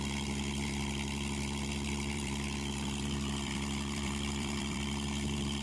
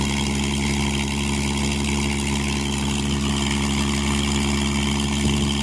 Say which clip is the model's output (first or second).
first